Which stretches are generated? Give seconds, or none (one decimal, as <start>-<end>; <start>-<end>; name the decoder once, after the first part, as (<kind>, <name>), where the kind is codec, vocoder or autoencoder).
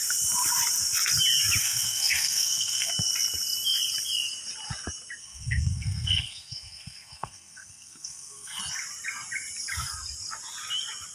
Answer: 1.6-2.9 (codec, SNAC); 5.2-8.6